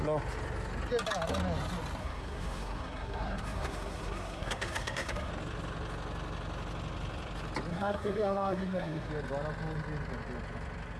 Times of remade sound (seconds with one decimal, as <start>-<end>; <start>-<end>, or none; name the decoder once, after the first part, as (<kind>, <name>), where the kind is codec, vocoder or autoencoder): 2.0-5.3 (codec, SNAC); 7.7-9.1